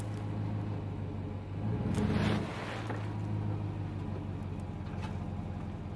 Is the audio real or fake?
real